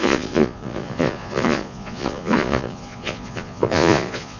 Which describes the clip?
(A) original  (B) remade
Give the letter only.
B